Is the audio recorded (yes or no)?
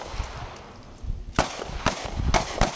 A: yes